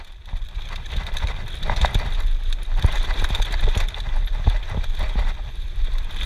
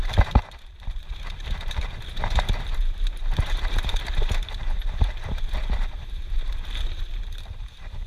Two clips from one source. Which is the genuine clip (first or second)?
first